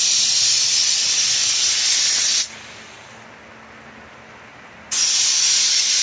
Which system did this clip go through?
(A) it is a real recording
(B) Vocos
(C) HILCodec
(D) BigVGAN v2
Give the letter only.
A